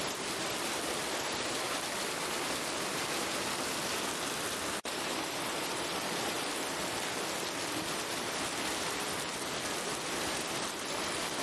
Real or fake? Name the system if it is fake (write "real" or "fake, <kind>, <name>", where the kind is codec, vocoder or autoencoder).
fake, vocoder, BigVGAN v2